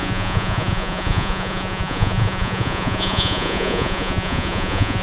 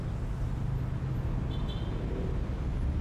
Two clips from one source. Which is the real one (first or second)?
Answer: second